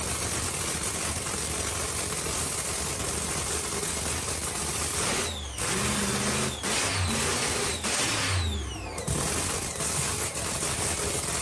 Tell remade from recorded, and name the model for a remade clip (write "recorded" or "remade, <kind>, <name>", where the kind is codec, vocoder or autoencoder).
recorded